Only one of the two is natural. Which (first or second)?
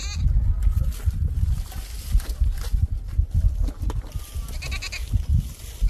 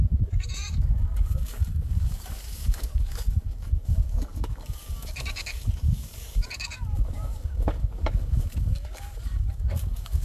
first